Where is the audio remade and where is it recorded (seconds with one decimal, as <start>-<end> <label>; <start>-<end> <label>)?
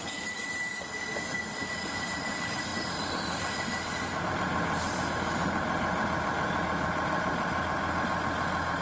0.0-8.8 recorded